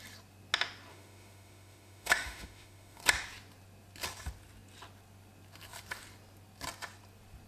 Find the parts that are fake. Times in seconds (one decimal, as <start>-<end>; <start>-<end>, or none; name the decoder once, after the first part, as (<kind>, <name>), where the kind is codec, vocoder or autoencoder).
0.9-3.0 (autoencoder, DAC-VAE)